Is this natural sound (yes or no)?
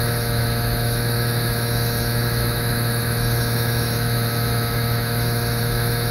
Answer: no